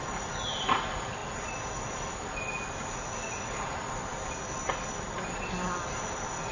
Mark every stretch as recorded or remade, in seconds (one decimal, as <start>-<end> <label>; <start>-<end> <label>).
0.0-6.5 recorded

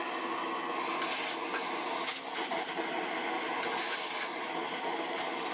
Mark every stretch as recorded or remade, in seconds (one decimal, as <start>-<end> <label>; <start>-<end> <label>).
0.0-5.5 recorded

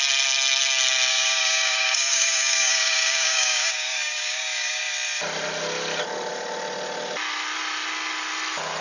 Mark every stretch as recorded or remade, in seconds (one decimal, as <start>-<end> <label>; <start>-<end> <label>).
0.0-1.1 recorded; 1.1-4.8 remade; 4.8-8.8 recorded